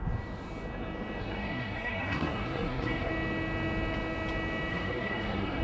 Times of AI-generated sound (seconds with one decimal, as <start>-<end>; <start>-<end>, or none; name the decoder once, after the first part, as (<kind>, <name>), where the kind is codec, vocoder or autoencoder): 1.2-3.1 (codec, SNAC); 4.7-5.6